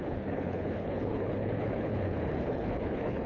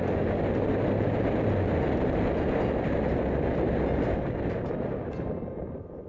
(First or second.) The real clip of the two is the second